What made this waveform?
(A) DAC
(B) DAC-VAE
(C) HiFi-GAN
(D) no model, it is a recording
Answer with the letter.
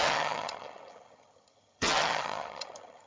C